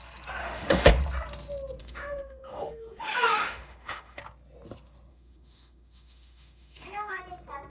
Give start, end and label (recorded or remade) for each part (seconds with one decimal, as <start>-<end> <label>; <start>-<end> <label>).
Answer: 0.0-0.4 recorded; 0.4-0.9 remade; 0.9-1.8 recorded; 1.8-4.2 remade; 4.2-5.1 recorded; 5.1-7.2 remade; 7.2-7.7 recorded